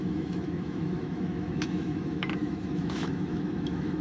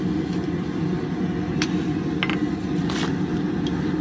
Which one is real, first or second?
second